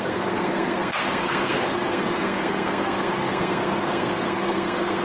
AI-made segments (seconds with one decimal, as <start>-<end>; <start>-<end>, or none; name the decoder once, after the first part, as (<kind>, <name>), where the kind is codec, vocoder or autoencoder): 0.0-5.0 (codec, SNAC)